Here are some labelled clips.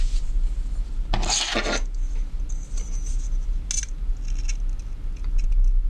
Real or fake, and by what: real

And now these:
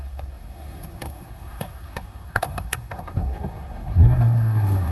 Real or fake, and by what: fake, codec, SNAC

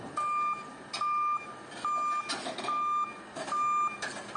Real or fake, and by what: real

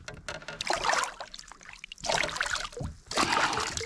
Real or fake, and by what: real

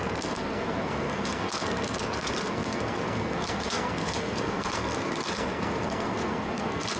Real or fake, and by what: fake, codec, SNAC